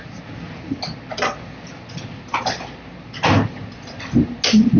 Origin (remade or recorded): recorded